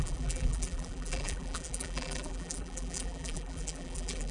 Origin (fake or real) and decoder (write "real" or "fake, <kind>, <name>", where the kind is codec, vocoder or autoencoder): fake, vocoder, BigVGAN v2